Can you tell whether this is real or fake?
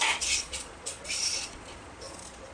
fake